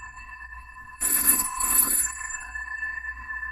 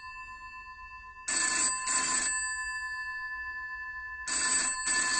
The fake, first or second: first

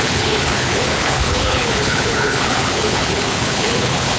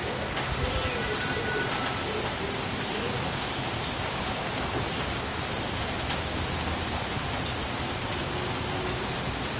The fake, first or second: first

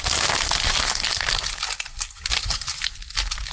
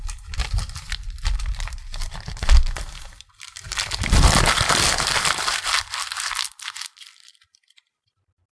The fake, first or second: second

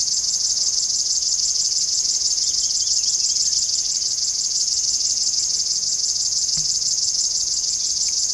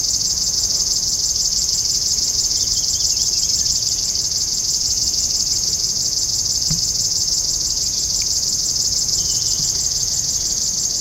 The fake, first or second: second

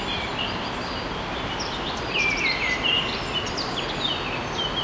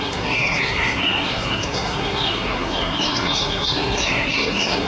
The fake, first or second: second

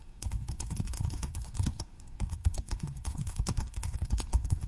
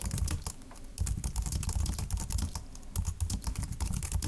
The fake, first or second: first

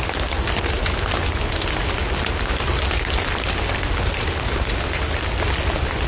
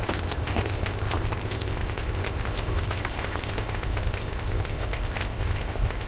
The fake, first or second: second